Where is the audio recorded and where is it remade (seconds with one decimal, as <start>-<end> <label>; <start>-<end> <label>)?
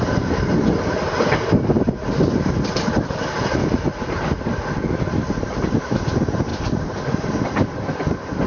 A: 0.0-8.5 recorded